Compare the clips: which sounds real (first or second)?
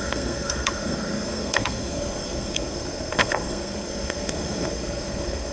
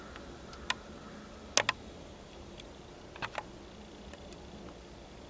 second